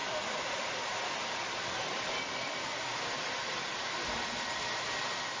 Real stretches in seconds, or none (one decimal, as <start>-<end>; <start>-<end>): 0.0-5.4